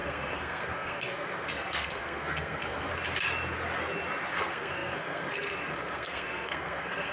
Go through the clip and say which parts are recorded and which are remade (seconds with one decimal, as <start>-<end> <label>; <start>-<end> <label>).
0.0-2.9 remade; 2.9-4.3 recorded; 4.3-7.1 remade